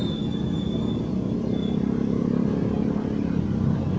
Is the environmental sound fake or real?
real